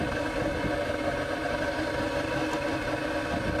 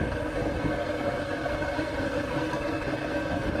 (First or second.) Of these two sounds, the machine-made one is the second